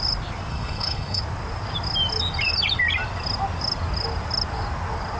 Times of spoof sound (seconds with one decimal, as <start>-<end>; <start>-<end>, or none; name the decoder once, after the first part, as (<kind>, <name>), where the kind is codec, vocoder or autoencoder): 0.5-1.2 (codec, HILCodec)

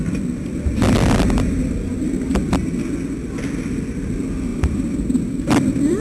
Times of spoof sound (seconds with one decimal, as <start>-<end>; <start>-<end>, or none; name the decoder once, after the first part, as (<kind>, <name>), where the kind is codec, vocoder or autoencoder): 4.5-6.0 (vocoder, BigVGAN v2)

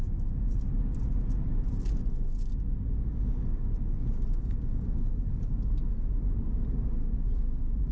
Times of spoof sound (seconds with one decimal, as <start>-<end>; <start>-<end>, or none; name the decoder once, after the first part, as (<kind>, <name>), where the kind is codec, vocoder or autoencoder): none

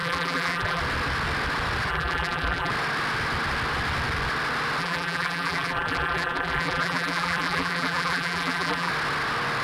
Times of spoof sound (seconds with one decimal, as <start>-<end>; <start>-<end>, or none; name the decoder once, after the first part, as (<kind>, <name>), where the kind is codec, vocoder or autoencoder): 0.0-0.8 (vocoder, BigVGAN v2); 1.9-2.7; 4.8-8.9

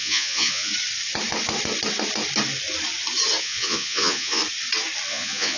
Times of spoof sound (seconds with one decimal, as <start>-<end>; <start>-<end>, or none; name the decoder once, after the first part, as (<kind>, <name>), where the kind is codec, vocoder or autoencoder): 0.0-0.7 (vocoder, Vocos); 3.4-4.4; 5.1-5.6